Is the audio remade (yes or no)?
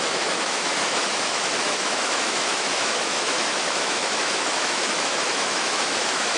yes